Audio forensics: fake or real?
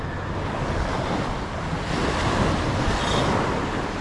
real